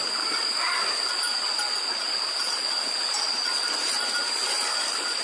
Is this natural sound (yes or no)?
yes